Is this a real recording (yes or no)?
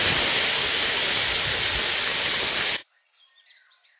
yes